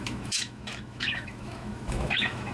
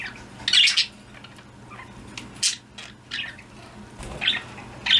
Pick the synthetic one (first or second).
first